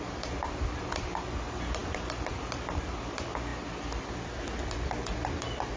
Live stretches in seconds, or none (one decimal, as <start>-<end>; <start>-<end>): 0.0-5.8